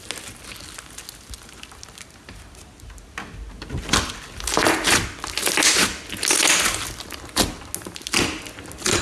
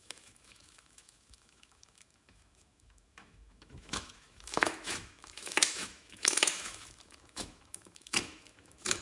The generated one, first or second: second